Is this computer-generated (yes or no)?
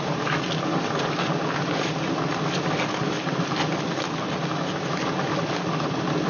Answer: no